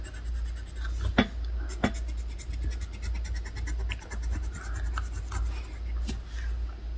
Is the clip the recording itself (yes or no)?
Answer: yes